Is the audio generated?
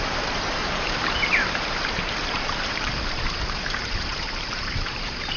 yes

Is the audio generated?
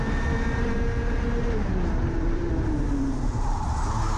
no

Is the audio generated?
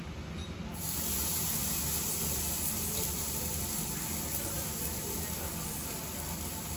no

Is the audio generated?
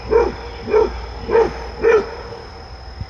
no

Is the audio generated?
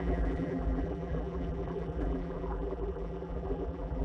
yes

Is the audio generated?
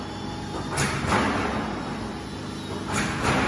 no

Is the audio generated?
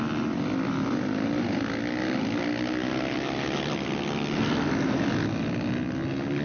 no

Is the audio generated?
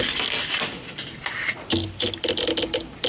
no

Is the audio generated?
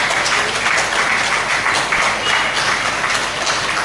no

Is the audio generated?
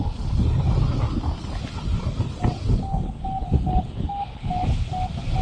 no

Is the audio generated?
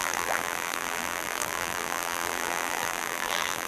yes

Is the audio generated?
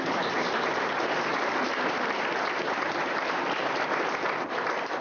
no